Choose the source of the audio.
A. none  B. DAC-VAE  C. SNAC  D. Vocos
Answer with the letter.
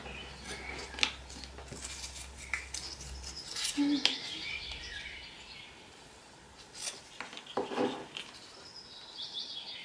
A